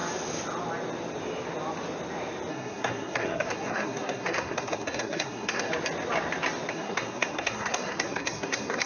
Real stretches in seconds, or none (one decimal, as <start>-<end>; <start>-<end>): 0.0-2.5; 5.7-6.7